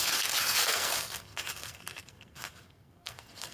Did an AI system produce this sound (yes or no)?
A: yes